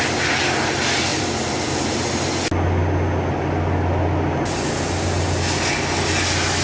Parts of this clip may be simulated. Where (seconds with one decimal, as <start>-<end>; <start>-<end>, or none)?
1.1-2.2